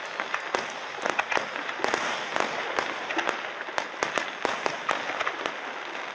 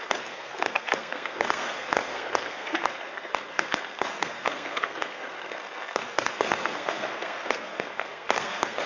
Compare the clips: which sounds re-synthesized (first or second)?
second